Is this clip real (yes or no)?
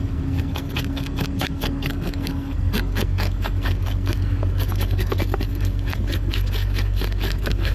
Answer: no